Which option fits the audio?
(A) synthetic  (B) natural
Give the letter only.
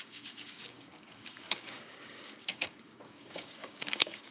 A